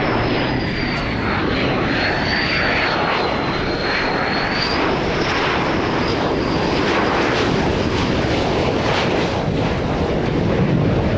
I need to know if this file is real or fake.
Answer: real